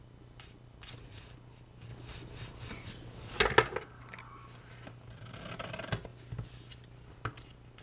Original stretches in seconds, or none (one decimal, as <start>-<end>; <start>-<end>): 0.0-7.8